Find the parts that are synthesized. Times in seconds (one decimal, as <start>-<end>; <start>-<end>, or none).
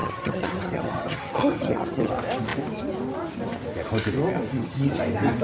0.0-2.1; 4.5-5.0